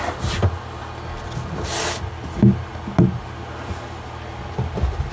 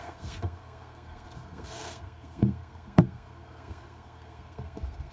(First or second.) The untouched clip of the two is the first